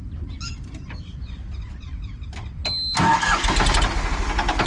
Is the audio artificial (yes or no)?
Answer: no